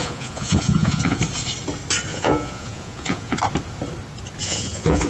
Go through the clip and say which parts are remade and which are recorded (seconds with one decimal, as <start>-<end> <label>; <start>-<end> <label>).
0.0-1.2 remade; 1.2-2.1 recorded; 2.1-3.4 remade; 3.4-4.4 recorded; 4.4-5.1 remade